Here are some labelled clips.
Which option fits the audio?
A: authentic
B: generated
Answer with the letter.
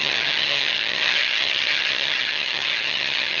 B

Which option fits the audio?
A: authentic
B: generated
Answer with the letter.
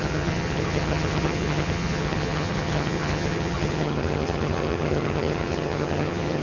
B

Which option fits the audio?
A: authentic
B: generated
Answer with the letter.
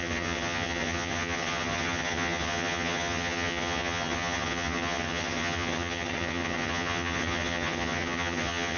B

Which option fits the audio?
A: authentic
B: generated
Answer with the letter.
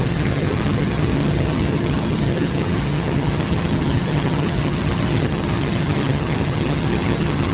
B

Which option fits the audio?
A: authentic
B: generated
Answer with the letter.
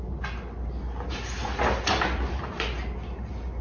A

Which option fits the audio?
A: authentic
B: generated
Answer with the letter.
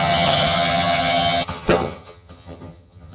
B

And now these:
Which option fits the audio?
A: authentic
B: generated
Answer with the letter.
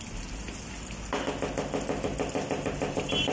A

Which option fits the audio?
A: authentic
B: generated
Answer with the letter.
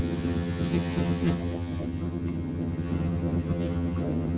B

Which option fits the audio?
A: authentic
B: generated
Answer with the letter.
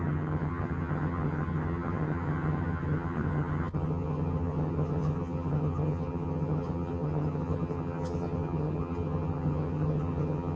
B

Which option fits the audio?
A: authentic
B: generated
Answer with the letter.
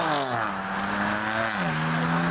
A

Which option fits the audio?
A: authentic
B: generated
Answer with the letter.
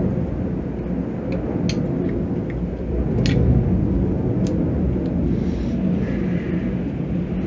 A